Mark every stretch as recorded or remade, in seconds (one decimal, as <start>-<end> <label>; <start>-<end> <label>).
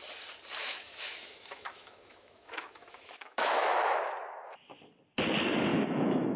0.0-0.6 recorded; 0.6-4.0 remade; 4.0-5.7 recorded; 5.7-6.4 remade